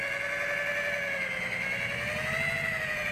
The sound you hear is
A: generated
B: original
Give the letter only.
B